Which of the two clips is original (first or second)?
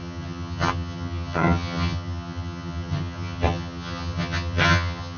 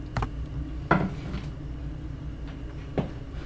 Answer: second